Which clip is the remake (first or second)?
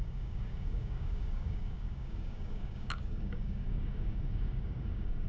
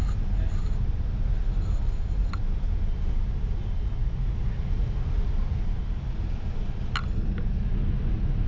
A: first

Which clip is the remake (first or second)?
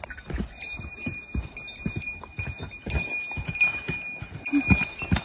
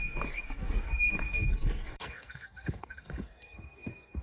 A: second